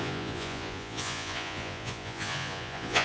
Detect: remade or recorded remade